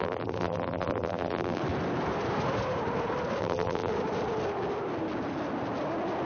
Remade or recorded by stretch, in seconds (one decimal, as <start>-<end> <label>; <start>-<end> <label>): 0.0-1.6 remade; 1.6-3.4 recorded; 3.4-3.9 remade; 3.9-6.3 recorded